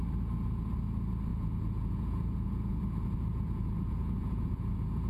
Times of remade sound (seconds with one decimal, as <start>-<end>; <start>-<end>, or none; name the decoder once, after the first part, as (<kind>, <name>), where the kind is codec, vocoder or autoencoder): 1.3-2.8 (vocoder, Vocos); 3.3-5.1